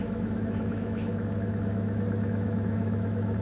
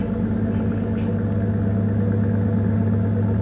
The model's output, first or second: first